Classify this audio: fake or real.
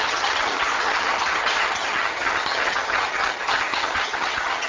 fake